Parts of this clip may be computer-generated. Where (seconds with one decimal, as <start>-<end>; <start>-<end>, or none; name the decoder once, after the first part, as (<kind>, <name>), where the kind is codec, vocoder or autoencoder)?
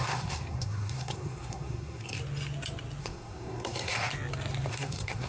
0.0-2.2 (codec, SNAC); 3.0-4.1; 4.7-5.3